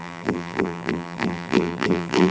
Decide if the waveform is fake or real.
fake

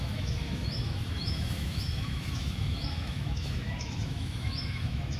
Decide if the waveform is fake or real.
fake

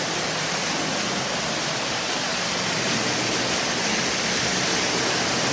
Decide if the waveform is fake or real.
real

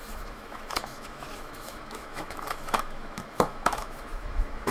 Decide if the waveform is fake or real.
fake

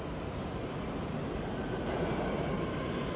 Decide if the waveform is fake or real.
real